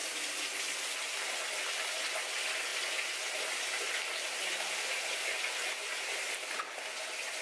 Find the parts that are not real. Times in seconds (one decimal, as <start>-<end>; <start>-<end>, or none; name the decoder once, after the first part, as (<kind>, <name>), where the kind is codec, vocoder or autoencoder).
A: none